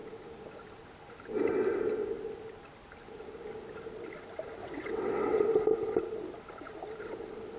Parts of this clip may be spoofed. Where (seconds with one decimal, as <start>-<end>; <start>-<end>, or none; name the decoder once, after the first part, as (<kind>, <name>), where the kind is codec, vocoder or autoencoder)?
4.6-5.4 (vocoder, WaveNeXt)